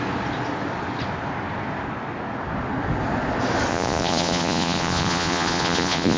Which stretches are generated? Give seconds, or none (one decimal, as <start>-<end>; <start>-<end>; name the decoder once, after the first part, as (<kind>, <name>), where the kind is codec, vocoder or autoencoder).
3.7-6.2 (vocoder, Vocos)